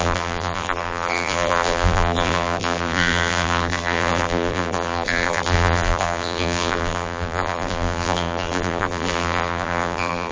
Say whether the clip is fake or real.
fake